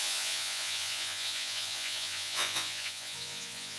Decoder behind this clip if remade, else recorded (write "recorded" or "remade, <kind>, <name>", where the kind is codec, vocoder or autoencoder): remade, vocoder, Vocos